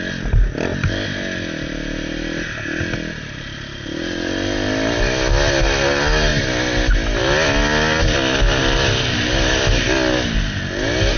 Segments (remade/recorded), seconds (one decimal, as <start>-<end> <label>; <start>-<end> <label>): 0.0-11.2 recorded